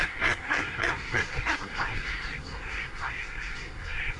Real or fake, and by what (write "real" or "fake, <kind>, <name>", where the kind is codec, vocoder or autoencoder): fake, codec, SNAC